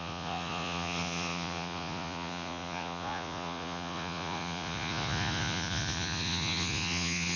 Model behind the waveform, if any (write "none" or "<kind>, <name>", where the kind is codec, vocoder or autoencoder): vocoder, Vocos